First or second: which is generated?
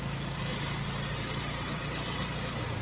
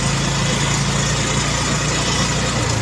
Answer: first